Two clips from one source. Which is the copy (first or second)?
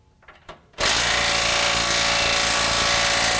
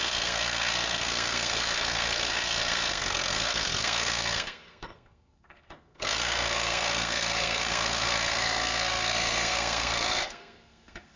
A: second